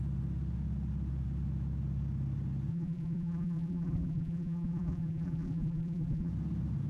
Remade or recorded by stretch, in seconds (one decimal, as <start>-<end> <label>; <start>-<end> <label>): 0.0-2.7 recorded; 2.7-6.3 remade; 6.3-6.9 recorded